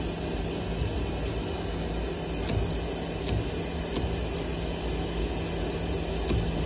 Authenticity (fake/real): real